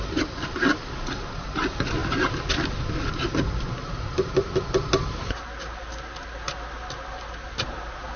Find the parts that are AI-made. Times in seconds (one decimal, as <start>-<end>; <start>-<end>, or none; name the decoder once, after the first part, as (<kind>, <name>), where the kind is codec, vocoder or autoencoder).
none